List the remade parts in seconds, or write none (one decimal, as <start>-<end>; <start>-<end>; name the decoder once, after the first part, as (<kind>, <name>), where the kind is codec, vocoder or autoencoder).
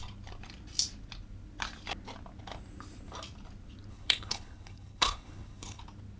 3.9-5.8 (codec, HILCodec)